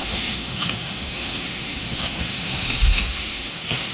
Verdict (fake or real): fake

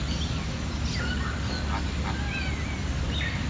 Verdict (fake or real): real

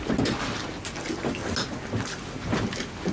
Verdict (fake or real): real